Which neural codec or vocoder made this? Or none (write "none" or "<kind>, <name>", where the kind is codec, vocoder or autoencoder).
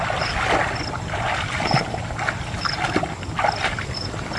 none